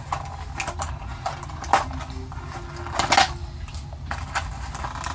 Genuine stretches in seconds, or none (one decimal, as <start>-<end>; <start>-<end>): 0.0-5.1